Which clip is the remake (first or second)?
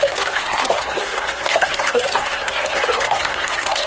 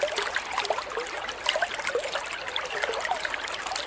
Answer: first